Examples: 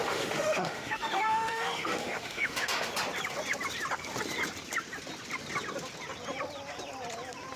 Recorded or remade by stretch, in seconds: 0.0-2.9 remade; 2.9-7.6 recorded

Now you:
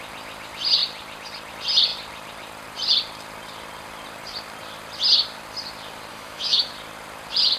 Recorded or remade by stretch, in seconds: 0.0-6.1 recorded; 6.1-6.7 remade; 6.7-7.6 recorded

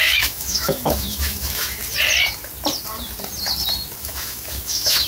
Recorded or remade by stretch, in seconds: 0.0-1.8 remade; 1.8-4.0 recorded; 4.0-5.1 remade

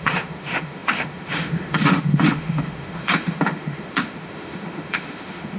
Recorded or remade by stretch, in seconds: 0.0-5.6 remade

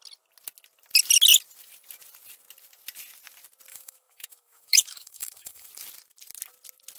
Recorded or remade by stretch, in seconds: 0.0-3.7 recorded; 3.7-5.7 remade; 5.7-7.0 recorded

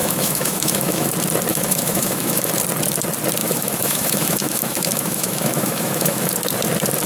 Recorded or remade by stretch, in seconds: 0.0-1.1 remade; 1.1-1.5 recorded; 1.5-2.5 remade; 2.5-3.4 recorded; 3.4-6.3 remade; 6.3-7.1 recorded

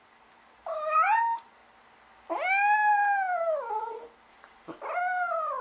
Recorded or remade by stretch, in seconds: 0.0-5.6 recorded